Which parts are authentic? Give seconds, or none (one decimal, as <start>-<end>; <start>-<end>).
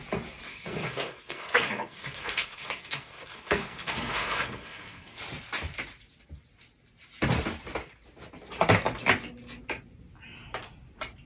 0.0-0.5; 5.2-11.3